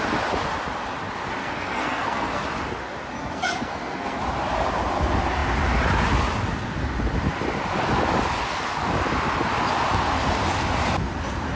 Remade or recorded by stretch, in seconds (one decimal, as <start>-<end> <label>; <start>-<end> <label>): 0.0-1.4 recorded; 1.4-2.4 remade; 2.4-3.2 recorded; 3.2-4.2 remade; 4.2-11.6 recorded